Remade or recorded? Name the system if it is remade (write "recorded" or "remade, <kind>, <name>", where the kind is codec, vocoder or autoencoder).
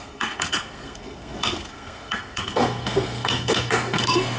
remade, codec, SNAC